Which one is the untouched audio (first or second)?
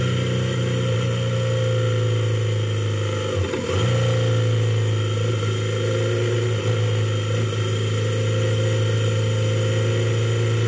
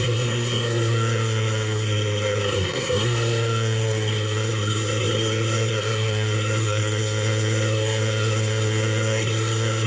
first